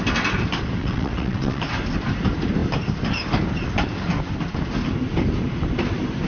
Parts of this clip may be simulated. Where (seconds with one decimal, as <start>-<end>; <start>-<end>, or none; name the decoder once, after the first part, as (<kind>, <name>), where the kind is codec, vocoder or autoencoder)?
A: 0.8-1.6 (vocoder, WaveNeXt)